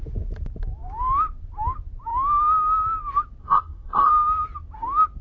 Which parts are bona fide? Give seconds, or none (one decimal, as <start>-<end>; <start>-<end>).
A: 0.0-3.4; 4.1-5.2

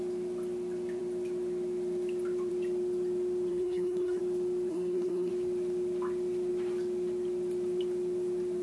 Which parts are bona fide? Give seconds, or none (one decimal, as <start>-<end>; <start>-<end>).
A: 0.0-3.5; 4.2-4.7; 5.3-8.6

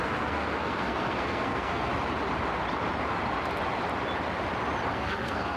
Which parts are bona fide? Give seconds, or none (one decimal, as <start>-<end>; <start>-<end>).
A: 1.9-4.9